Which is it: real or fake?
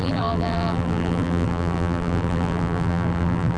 fake